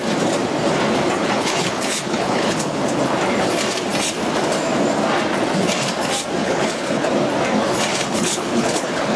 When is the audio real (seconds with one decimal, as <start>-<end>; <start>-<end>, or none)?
0.0-1.2; 2.8-6.4; 7.1-7.9